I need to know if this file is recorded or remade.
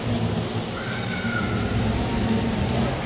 recorded